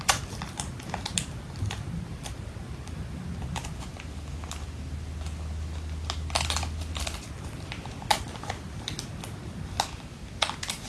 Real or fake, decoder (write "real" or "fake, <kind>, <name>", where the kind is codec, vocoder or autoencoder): real